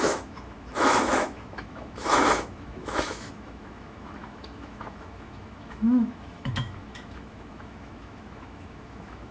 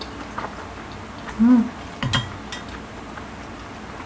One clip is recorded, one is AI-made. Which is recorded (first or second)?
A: second